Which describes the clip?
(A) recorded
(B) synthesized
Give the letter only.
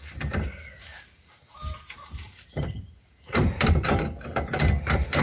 B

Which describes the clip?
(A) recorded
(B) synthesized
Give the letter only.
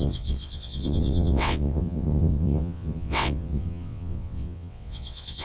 B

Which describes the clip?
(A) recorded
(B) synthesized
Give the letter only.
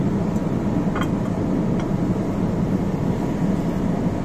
A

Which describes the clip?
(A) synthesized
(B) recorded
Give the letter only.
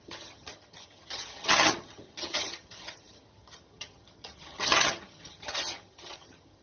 A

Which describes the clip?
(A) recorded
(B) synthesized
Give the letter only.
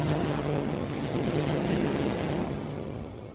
B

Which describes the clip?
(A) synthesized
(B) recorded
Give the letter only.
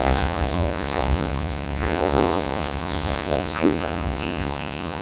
A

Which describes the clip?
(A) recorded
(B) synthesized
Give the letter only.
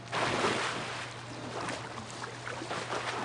A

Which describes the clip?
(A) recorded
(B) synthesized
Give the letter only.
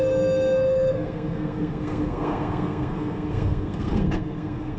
B